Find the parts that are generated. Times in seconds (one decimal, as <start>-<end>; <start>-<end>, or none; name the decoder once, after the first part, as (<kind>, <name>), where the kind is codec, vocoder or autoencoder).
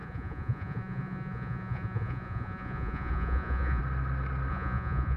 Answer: 0.0-3.8 (vocoder, Vocos); 4.5-5.2